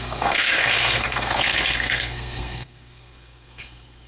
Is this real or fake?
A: fake